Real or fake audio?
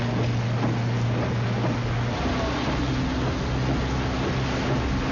real